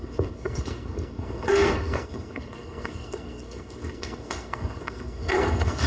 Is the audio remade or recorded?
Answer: remade